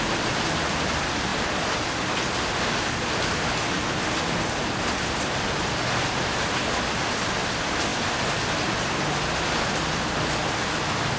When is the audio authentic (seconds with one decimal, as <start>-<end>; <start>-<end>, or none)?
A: 0.0-11.2